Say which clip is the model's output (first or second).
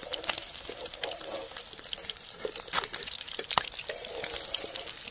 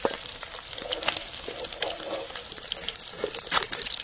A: first